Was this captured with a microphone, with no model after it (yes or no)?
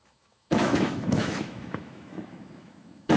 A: no